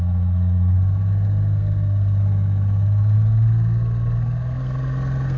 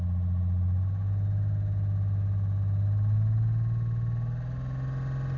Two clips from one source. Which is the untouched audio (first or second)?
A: second